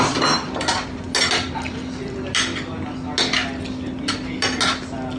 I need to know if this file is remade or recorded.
recorded